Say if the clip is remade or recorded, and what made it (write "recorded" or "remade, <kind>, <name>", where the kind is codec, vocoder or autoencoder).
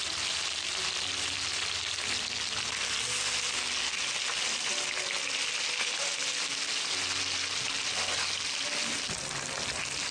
recorded